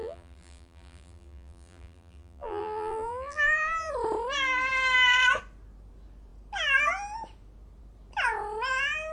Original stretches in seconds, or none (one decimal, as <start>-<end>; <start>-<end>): 3.9-9.1

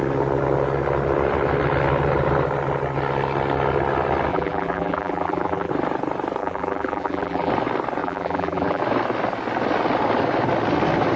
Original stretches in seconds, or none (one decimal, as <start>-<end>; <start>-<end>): 0.0-4.3; 5.7-6.4; 7.5-8.0; 8.8-11.2